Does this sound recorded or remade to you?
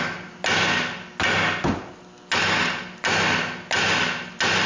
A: recorded